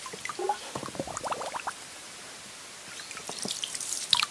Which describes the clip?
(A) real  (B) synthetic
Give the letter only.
A